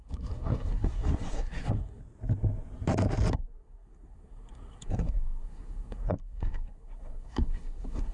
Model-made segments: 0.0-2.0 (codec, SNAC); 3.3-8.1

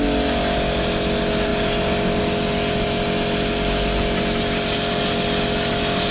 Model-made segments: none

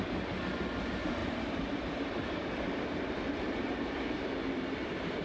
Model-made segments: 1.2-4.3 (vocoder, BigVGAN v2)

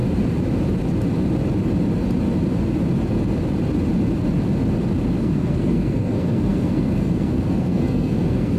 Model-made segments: 5.2-8.6 (codec, SNAC)

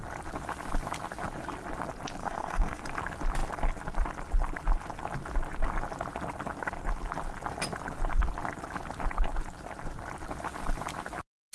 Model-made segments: 2.2-2.8 (codec, SNAC)

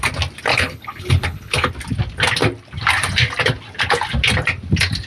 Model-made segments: 0.5-1.7 (codec, HILCodec)